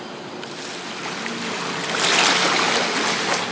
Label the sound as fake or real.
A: real